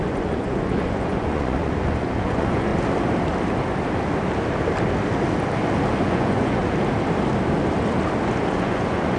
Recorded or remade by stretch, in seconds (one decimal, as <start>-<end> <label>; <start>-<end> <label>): 0.0-2.7 remade; 2.7-6.0 recorded; 6.0-6.6 remade; 6.6-8.5 recorded; 8.5-9.2 remade